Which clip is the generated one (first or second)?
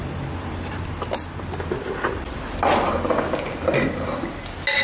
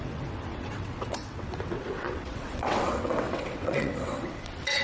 second